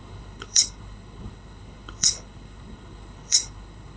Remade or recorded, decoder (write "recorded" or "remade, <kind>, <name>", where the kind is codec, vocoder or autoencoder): remade, codec, HILCodec